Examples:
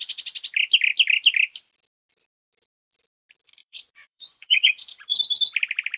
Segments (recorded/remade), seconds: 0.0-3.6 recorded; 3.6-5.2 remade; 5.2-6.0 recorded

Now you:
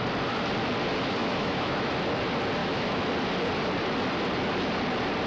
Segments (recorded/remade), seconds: 0.0-1.2 recorded; 1.2-1.9 remade; 1.9-2.6 recorded; 2.6-3.1 remade; 3.1-5.3 recorded

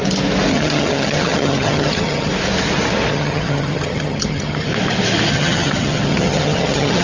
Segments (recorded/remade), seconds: 0.0-0.5 recorded; 0.5-2.3 remade; 2.3-3.1 recorded; 3.1-4.7 remade; 4.7-5.3 recorded; 5.3-7.0 remade

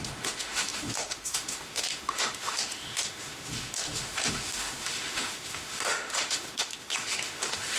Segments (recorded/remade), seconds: 0.0-7.8 remade